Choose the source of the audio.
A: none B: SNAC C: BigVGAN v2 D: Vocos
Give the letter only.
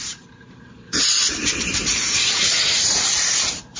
C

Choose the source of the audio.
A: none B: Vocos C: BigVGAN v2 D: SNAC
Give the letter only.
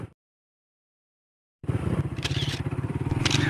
C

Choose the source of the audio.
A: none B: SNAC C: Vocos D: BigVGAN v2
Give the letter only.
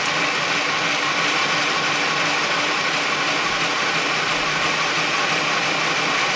A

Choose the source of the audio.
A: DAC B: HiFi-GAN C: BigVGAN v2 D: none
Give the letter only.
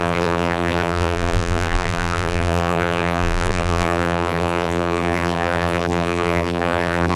C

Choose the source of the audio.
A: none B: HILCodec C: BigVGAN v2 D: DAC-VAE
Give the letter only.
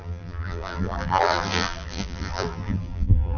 C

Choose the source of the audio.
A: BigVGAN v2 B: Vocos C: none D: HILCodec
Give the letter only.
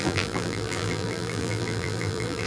A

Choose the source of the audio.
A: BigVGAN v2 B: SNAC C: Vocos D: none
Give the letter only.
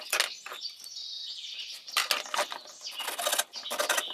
D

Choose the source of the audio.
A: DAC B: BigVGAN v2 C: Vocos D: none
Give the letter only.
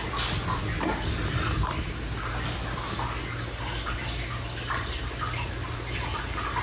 D